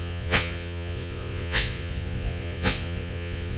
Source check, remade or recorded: remade